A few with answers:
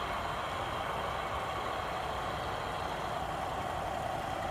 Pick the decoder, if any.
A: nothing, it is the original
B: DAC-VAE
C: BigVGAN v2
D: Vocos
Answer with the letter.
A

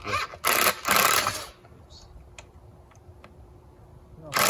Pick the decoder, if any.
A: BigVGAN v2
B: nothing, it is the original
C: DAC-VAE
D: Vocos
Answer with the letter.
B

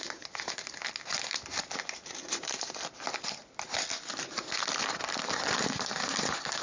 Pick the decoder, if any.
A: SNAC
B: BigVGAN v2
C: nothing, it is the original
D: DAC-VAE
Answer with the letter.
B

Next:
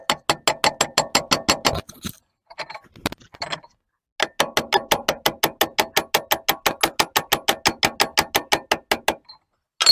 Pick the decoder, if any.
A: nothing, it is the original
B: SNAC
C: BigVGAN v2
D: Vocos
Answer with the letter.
A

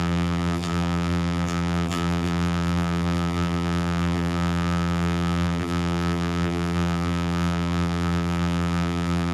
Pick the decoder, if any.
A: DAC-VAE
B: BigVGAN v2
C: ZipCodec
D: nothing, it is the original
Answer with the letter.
B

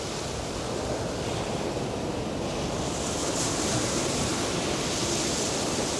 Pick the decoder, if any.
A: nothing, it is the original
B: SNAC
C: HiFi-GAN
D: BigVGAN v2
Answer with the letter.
A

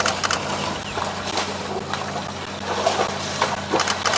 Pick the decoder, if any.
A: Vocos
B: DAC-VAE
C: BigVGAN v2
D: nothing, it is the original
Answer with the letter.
C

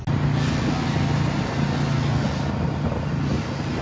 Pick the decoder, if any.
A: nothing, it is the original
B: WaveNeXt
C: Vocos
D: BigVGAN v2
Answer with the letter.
A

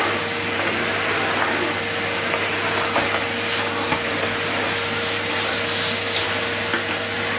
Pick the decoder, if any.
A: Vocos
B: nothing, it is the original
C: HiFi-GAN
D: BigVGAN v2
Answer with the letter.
D